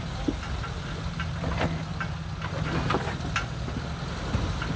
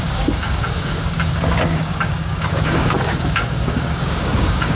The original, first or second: first